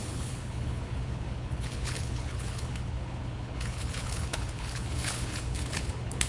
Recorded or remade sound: remade